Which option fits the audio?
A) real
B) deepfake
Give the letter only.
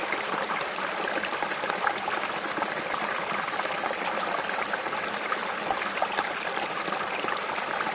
A